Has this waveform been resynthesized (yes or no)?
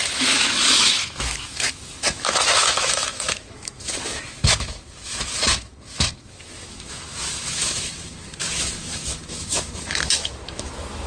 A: yes